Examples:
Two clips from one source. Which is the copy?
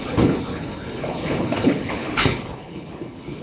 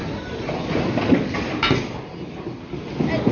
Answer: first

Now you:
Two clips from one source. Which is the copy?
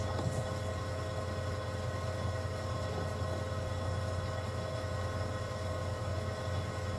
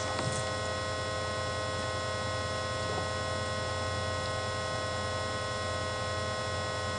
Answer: first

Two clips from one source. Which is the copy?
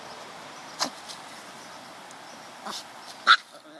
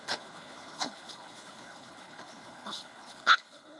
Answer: second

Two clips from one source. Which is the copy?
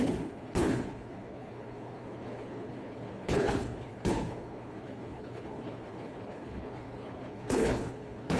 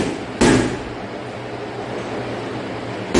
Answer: first